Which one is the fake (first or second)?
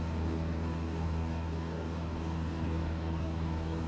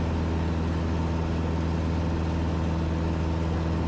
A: first